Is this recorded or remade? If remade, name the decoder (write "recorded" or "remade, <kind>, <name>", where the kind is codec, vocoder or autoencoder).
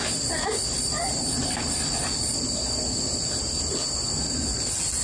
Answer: recorded